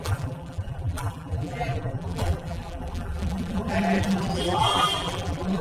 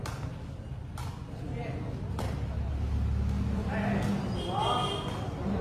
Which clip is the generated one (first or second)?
first